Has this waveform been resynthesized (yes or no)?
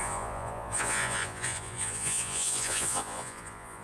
yes